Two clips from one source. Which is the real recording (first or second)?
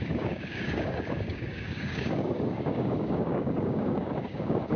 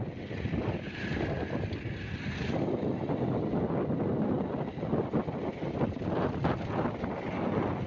second